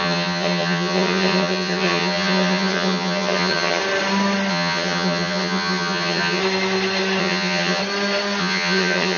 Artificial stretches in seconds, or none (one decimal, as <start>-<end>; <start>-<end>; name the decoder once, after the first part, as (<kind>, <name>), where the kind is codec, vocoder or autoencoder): 0.0-3.8 (vocoder, HiFi-GAN); 4.5-6.4; 7.2-7.8; 8.4-9.2